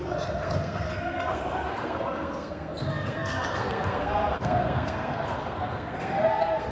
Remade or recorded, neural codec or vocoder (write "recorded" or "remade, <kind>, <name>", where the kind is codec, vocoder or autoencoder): remade, codec, SNAC